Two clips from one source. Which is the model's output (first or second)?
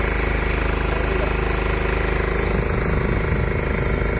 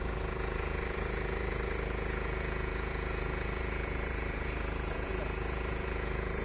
second